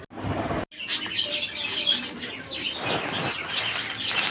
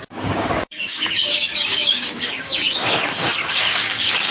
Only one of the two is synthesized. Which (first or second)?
second